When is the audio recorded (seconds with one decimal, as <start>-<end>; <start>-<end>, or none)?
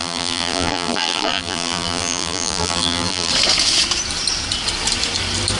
3.3-5.6